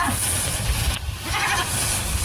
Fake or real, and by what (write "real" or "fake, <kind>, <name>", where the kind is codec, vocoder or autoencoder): real